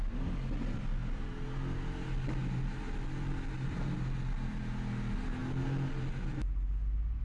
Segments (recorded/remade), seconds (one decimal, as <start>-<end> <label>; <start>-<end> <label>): 0.0-7.2 recorded